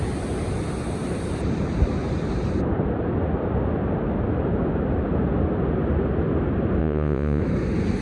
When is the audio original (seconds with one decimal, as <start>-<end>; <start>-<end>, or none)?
0.0-6.8; 7.4-8.0